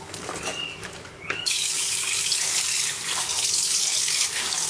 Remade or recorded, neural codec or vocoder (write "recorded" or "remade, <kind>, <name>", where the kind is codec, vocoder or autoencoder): remade, codec, DAC